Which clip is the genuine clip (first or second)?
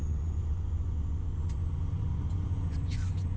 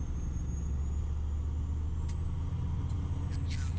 second